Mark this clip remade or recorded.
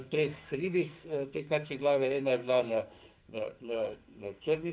remade